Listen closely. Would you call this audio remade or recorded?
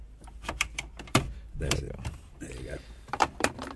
remade